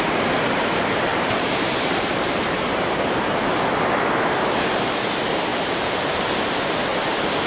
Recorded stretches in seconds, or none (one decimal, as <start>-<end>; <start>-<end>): 0.0-1.1; 4.9-5.5; 6.2-7.5